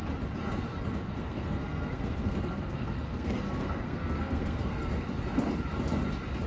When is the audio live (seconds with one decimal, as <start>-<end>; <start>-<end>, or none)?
0.0-1.1; 4.9-6.5